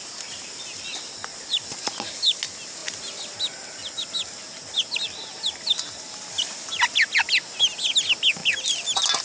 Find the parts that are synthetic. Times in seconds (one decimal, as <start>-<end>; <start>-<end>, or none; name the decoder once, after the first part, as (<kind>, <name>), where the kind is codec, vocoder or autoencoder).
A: none